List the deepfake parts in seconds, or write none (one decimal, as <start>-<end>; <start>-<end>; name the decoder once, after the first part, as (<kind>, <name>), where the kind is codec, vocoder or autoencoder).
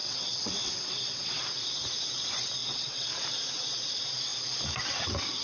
0.0-1.4 (vocoder, WaveNeXt); 2.6-3.1